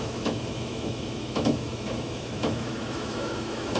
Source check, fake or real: fake